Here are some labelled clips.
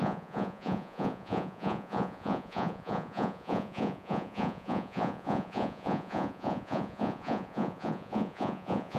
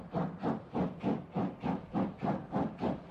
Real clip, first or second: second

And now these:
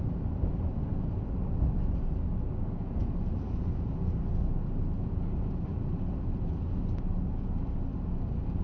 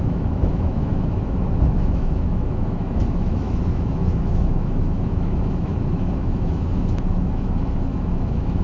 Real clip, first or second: first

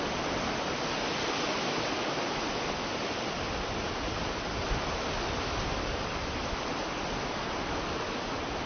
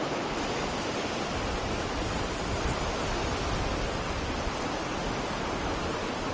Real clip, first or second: first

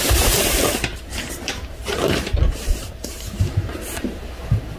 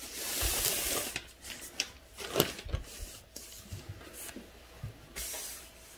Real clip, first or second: second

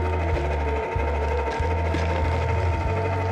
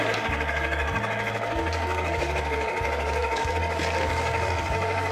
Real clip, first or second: first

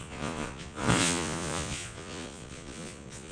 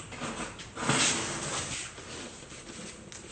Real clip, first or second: second